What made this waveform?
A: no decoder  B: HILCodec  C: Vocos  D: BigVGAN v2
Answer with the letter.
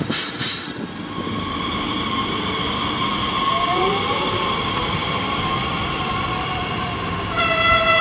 D